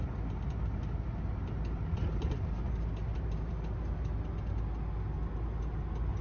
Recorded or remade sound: recorded